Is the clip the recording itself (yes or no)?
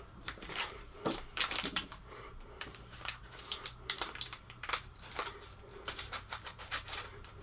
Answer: no